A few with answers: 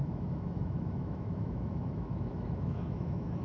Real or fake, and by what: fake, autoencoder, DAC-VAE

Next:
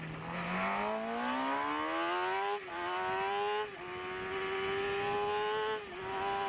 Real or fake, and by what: real